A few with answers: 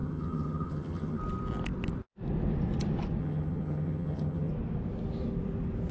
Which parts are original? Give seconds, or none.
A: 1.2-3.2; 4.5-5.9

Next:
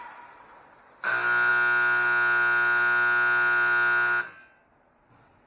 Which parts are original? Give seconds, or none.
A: 0.0-5.5

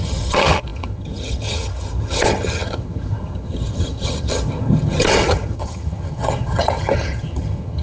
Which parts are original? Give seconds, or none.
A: none

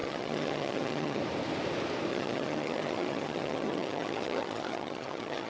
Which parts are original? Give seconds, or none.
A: 1.2-2.1

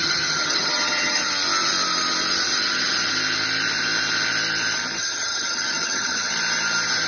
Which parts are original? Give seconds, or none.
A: 1.3-5.0; 6.3-7.1

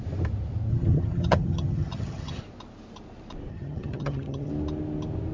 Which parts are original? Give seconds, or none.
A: 0.0-0.7; 2.4-3.5; 4.5-5.3

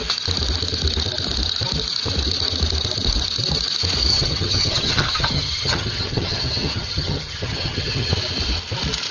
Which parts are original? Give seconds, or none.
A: 0.0-4.1; 8.1-9.1